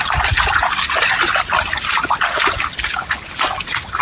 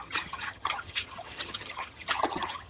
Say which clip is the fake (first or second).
second